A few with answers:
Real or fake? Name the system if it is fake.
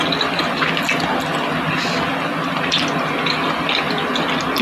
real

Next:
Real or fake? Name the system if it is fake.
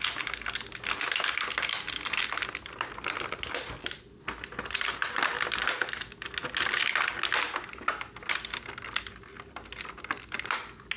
real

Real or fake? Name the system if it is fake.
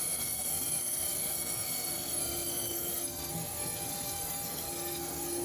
fake, codec, SNAC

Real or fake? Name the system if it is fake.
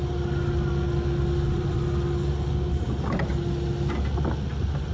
real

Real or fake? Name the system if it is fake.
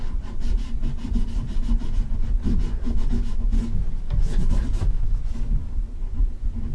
real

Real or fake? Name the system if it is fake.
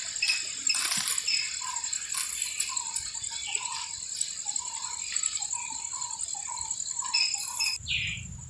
real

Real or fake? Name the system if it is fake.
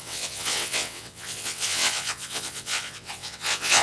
fake, vocoder, WaveNeXt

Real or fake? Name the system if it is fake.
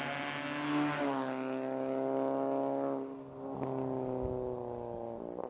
real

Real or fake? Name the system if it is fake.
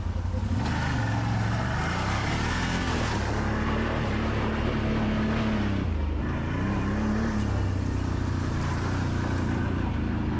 real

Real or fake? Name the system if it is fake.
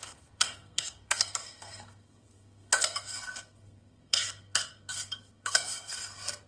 fake, codec, SNAC